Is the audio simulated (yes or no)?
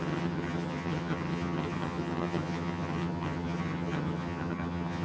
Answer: yes